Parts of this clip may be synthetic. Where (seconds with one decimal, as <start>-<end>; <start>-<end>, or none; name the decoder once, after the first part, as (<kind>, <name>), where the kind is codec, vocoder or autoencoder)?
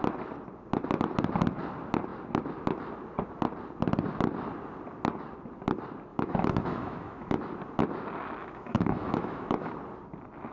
6.1-7.4 (autoencoder, DAC-VAE); 8.4-9.7